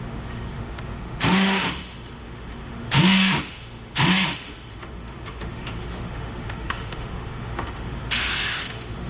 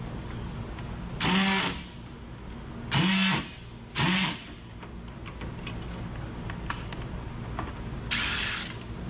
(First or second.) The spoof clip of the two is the first